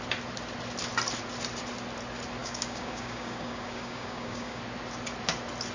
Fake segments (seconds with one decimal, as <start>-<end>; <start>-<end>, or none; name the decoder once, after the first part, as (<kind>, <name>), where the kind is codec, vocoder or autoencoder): 2.4-4.6 (codec, DAC)